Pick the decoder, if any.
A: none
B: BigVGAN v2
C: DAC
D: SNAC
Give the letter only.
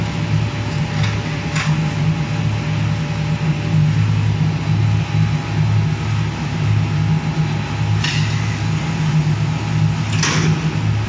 A